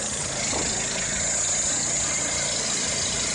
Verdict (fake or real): real